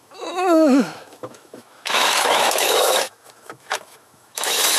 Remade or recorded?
remade